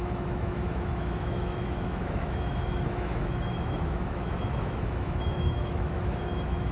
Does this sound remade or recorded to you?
remade